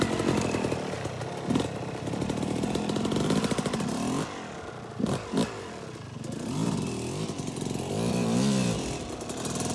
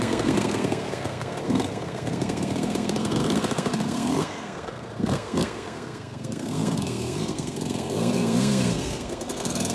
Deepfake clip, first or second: second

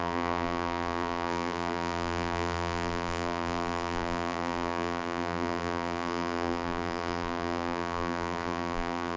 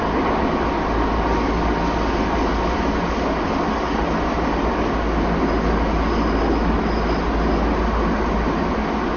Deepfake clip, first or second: first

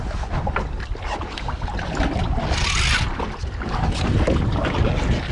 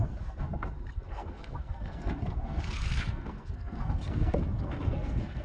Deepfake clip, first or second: second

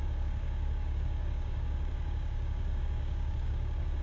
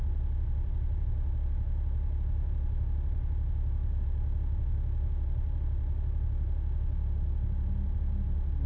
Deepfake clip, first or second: first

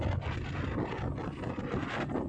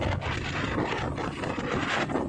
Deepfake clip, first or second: second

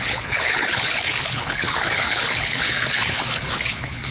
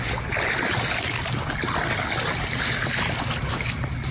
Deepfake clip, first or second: first